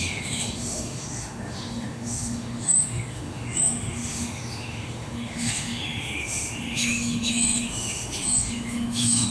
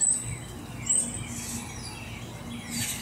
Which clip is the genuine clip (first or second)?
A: second